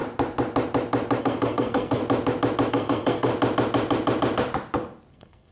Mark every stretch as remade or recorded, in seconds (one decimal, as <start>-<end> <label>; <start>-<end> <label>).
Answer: 0.0-1.2 recorded; 1.2-2.0 remade; 2.0-2.7 recorded; 2.7-3.3 remade; 3.3-5.1 recorded; 5.1-5.5 remade